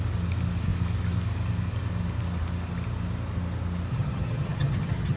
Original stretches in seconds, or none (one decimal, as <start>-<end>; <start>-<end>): 0.0-3.9